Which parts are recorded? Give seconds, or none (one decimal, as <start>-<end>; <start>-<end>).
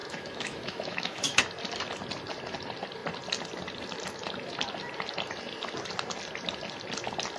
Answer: 1.4-7.4